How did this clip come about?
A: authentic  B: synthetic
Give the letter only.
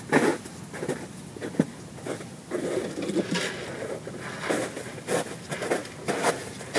A